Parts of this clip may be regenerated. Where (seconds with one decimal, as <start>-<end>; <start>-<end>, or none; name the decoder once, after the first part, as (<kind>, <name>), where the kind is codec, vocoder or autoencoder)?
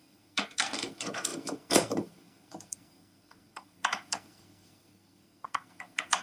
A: 0.0-6.2 (codec, SNAC)